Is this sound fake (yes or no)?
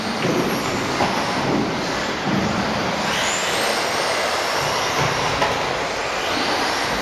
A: no